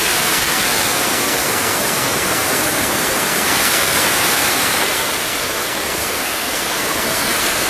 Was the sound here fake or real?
fake